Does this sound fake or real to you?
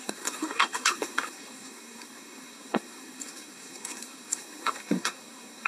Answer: fake